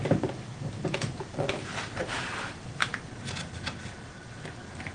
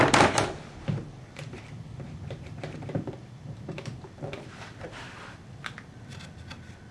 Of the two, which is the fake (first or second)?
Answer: second